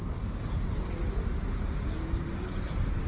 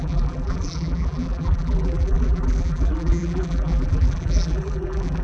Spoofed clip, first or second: second